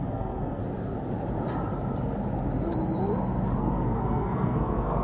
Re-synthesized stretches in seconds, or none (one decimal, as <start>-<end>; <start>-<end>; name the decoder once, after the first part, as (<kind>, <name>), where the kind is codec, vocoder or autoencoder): 0.0-0.6 (codec, SNAC); 3.6-5.0